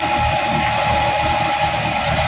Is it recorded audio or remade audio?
recorded